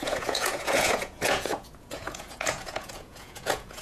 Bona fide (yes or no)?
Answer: no